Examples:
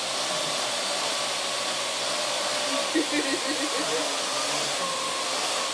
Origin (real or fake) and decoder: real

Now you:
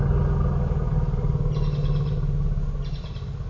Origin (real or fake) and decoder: real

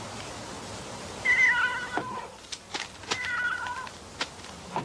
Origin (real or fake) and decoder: real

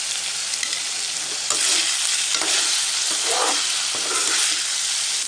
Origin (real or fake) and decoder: real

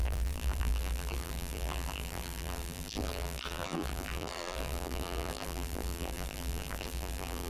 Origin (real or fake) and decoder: fake, vocoder, BigVGAN v2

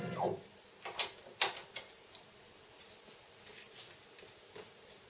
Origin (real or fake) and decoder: fake, vocoder, BigVGAN v2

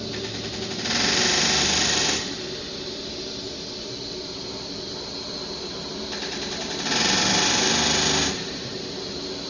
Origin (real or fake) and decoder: real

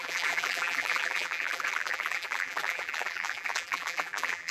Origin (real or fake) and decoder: fake, vocoder, BigVGAN v2